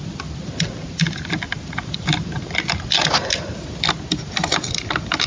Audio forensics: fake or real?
real